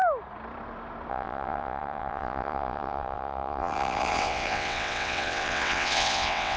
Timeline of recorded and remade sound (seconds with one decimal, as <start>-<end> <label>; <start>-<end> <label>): 0.0-1.1 recorded; 1.1-6.6 remade